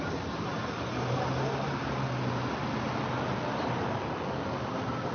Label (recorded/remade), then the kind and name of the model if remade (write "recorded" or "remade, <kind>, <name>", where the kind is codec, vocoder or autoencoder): recorded